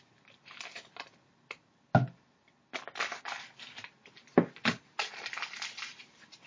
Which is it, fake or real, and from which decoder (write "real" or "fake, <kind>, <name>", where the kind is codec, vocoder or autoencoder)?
real